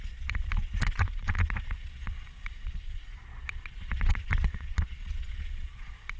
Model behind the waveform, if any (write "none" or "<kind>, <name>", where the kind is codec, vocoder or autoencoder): vocoder, Vocos